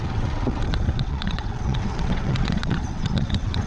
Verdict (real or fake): fake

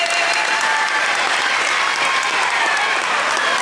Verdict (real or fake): real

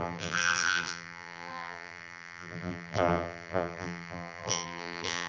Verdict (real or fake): fake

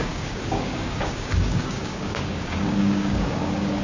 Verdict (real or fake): fake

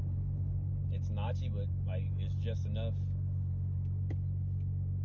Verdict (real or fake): real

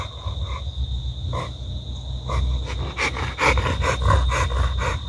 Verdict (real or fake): real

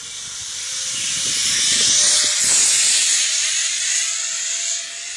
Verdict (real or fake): real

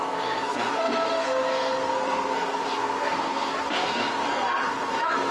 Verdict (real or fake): fake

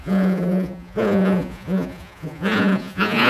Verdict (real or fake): fake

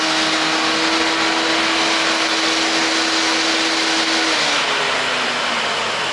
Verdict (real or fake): real